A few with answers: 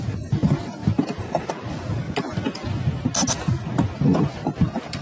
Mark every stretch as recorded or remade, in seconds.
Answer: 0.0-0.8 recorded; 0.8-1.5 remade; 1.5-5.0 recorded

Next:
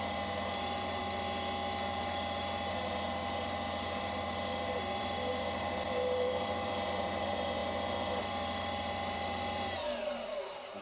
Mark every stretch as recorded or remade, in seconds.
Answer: 0.0-1.0 remade; 1.0-2.0 recorded; 2.0-7.6 remade; 7.6-8.2 recorded; 8.2-10.8 remade